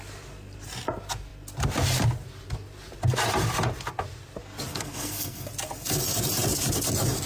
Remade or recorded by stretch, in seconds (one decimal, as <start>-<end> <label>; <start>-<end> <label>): 0.0-4.7 recorded; 4.7-5.5 remade; 5.5-7.3 recorded